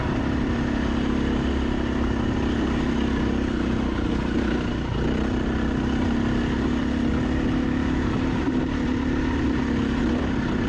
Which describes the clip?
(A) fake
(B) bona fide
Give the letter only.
B